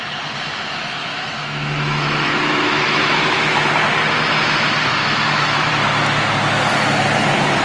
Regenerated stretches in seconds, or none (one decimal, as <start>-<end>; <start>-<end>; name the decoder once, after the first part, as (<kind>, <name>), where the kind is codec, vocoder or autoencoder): 1.0-3.7 (autoencoder, DAC-VAE); 4.9-5.7

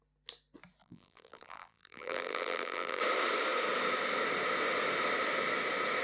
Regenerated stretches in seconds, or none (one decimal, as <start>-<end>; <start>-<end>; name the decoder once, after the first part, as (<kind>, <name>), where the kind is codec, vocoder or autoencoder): 0.8-3.0 (vocoder, BigVGAN v2)

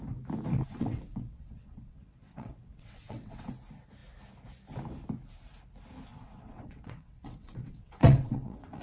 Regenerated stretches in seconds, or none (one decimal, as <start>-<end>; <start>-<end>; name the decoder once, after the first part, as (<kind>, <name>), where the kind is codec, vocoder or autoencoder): 0.5-3.5 (vocoder, WaveNeXt); 6.1-8.8